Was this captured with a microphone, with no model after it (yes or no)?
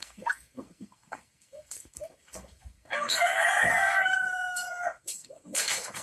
no